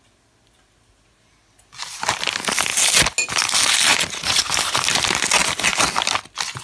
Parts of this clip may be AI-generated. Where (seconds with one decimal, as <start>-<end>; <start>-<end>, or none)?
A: none